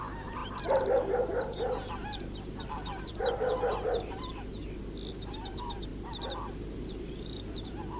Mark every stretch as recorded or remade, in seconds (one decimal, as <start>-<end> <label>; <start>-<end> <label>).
0.0-4.6 remade; 4.6-5.1 recorded; 5.1-5.9 remade; 5.9-6.7 recorded; 6.7-8.0 remade